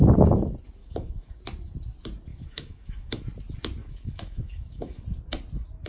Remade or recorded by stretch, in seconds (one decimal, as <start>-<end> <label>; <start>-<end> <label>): 0.0-0.8 recorded; 0.8-1.4 remade; 1.4-2.3 recorded; 2.3-3.2 remade; 3.2-3.8 recorded; 3.8-5.0 remade; 5.0-5.9 recorded